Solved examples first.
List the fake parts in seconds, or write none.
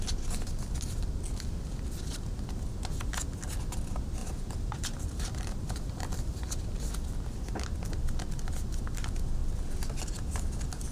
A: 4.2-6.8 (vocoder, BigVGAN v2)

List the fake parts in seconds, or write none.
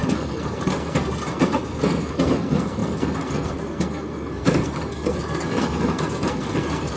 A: 0.0-7.0 (codec, SNAC)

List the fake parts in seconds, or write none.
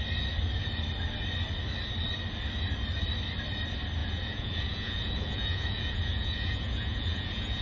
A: 4.0-7.6 (vocoder, Vocos)